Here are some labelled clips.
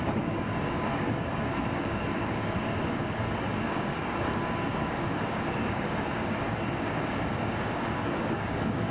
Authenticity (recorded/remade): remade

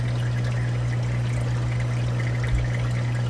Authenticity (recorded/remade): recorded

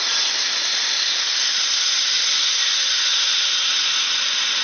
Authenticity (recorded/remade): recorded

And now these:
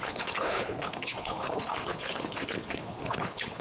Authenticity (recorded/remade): remade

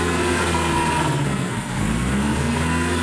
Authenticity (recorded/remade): remade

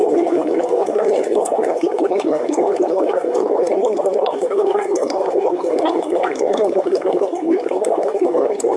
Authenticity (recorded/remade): remade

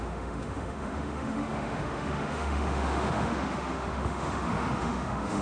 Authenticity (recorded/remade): remade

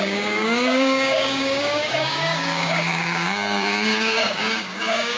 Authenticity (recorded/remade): remade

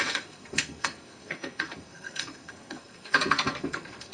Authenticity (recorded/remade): remade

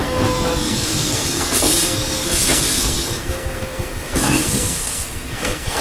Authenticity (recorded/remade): remade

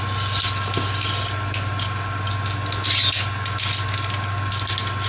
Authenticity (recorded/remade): recorded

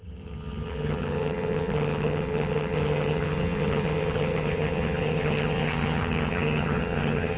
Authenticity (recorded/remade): remade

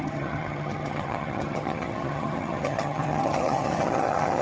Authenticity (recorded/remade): remade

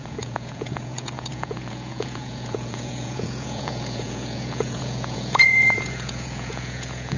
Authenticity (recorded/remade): remade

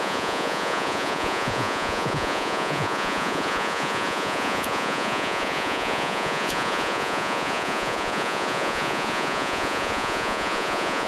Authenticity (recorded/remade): remade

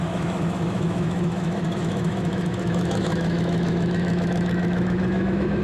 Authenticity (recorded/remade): remade